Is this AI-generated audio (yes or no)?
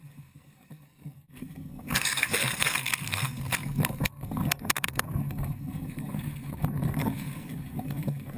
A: yes